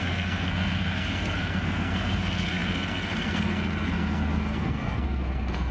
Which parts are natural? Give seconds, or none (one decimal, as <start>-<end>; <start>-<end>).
none